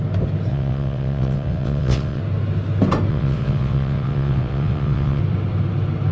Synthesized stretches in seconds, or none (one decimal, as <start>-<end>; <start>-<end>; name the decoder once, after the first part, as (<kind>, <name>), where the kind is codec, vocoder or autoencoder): 0.5-2.2 (vocoder, WaveNeXt); 3.1-5.2